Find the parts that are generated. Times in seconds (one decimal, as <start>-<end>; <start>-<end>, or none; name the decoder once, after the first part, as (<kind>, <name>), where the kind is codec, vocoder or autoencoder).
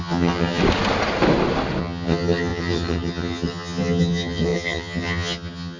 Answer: 0.0-0.6 (vocoder, HiFi-GAN); 1.8-5.8